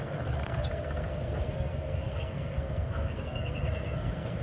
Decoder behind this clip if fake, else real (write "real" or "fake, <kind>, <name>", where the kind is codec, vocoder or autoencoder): fake, codec, SNAC